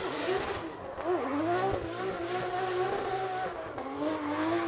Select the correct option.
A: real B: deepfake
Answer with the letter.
A